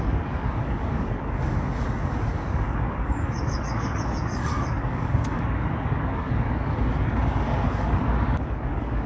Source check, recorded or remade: remade